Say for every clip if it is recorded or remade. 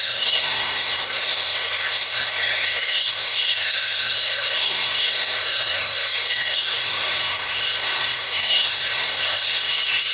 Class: remade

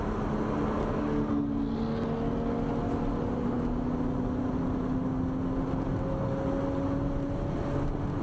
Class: recorded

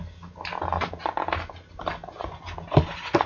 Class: recorded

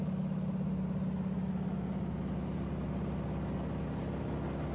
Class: recorded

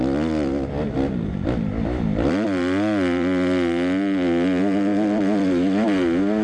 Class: remade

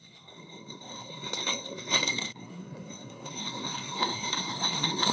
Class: remade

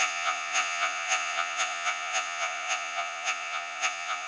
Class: remade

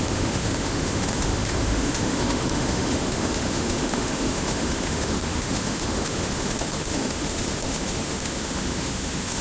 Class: remade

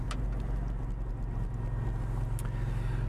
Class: recorded